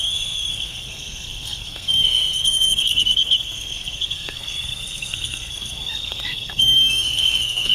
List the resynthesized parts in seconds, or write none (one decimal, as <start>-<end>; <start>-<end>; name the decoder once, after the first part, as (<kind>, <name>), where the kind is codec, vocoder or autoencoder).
0.0-7.7 (codec, SNAC)